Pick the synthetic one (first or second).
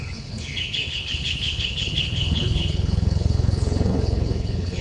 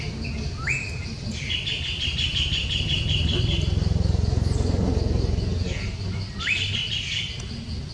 first